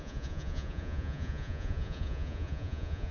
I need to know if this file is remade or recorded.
remade